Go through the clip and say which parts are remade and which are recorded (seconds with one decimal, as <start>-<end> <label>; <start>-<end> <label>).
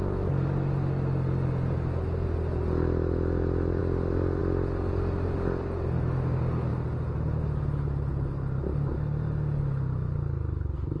0.0-11.0 recorded